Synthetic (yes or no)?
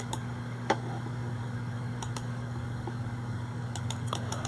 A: yes